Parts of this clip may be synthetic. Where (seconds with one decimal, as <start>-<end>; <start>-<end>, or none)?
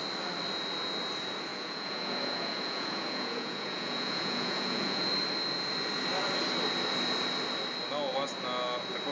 1.5-5.1